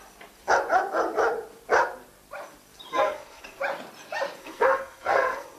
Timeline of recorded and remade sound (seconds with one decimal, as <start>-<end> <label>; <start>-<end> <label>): 0.0-2.9 recorded; 2.9-3.6 remade; 3.6-4.4 recorded; 4.4-5.6 remade